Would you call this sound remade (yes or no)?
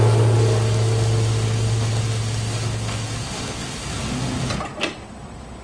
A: no